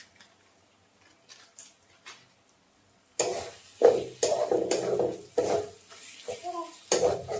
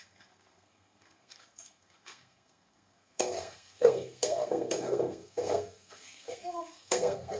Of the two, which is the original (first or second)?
first